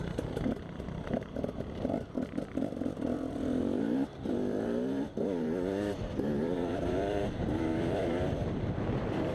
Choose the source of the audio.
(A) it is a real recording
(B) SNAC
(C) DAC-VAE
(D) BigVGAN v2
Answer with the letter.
D